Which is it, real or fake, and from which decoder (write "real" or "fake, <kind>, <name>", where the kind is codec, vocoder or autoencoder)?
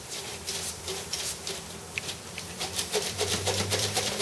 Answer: fake, vocoder, BigVGAN v2